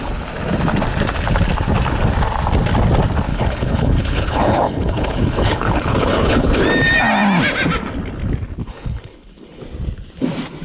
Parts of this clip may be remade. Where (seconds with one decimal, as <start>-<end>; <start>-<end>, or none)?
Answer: 3.3-6.6; 8.6-9.6